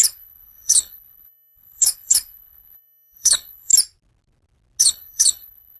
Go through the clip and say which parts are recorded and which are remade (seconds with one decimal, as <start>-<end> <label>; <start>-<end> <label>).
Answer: 0.0-3.7 remade; 3.7-4.8 recorded; 4.8-5.8 remade